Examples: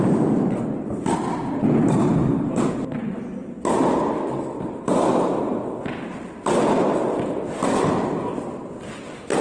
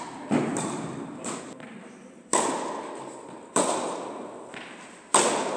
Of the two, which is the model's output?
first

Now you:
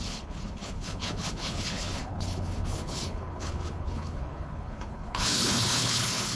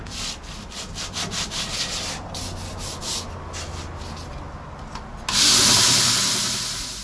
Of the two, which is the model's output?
first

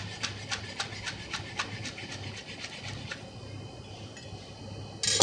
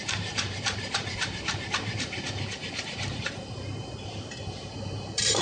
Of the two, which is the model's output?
second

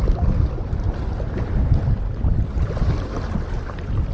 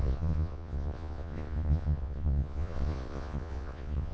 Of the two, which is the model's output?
second